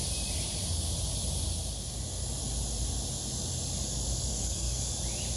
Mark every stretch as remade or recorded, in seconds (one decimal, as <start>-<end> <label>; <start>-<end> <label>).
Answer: 0.0-4.3 recorded; 4.3-4.8 remade; 4.8-5.4 recorded